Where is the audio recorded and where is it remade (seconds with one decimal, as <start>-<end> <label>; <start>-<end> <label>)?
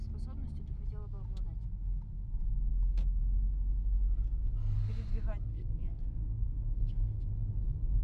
0.0-2.7 recorded; 2.7-3.2 remade; 3.2-5.5 recorded; 5.5-7.3 remade; 7.3-8.0 recorded